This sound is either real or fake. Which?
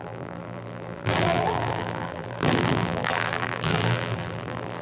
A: fake